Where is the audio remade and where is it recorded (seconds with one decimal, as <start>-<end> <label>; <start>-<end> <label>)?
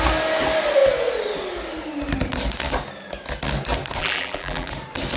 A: 0.0-4.0 recorded; 4.0-4.7 remade; 4.7-5.2 recorded